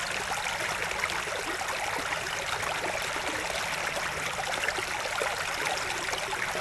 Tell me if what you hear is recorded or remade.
recorded